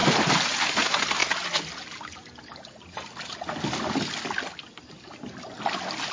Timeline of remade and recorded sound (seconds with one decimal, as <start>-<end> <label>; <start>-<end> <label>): 0.0-6.1 recorded